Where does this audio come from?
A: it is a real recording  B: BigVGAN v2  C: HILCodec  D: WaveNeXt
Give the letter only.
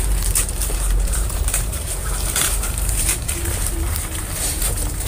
B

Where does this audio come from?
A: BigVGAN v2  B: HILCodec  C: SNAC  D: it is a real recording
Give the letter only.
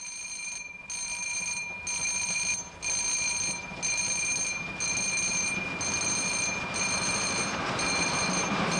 D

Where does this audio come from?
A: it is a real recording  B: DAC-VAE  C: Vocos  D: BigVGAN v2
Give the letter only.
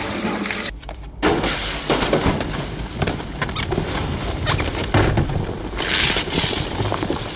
A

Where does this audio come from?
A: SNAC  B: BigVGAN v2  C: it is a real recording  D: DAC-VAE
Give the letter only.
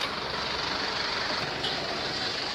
B